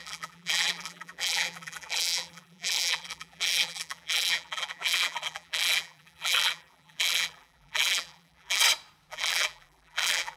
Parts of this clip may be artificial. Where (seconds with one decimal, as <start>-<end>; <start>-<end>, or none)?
0.0-8.6; 9.1-10.4